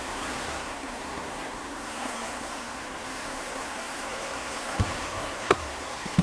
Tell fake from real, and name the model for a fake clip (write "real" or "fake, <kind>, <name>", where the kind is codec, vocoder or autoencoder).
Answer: fake, codec, SNAC